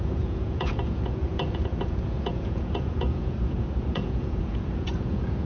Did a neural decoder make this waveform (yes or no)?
yes